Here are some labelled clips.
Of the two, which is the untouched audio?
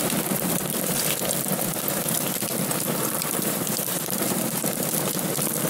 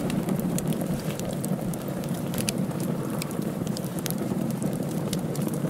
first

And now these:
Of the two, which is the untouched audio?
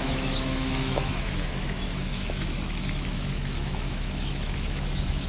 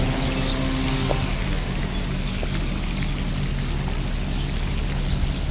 second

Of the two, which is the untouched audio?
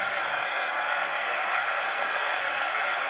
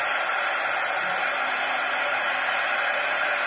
second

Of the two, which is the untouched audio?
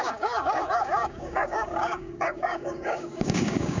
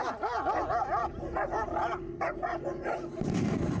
second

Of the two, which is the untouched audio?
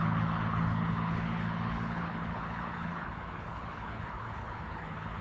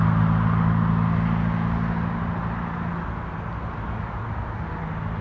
second